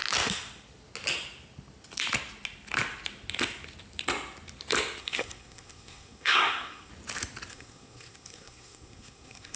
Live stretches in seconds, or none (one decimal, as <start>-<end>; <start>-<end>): 0.0-5.0; 6.9-7.5